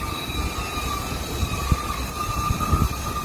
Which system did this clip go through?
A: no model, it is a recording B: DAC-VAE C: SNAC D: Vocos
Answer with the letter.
A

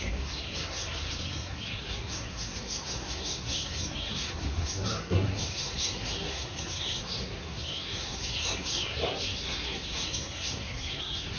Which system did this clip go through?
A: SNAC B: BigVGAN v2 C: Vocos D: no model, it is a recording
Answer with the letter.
A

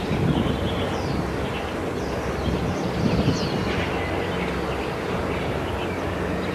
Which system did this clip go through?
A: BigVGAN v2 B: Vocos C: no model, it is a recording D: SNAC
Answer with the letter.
C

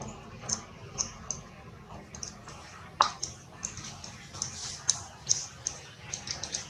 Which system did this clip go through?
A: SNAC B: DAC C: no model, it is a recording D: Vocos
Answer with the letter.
C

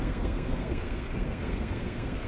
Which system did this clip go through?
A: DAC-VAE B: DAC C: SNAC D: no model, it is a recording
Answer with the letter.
C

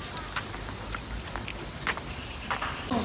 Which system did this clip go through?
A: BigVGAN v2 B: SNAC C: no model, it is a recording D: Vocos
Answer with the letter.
C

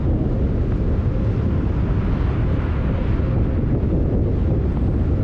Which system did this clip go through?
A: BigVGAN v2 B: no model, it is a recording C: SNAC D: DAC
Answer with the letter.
B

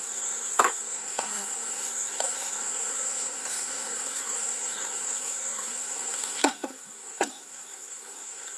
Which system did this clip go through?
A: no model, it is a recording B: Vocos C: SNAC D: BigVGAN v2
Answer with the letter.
C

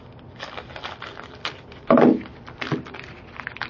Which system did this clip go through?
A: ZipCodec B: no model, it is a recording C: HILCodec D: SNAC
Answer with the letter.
B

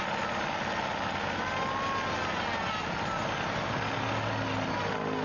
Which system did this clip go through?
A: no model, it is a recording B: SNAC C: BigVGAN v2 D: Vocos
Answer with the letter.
A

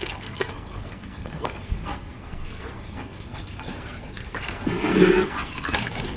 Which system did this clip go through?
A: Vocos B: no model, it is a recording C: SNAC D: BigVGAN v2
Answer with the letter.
C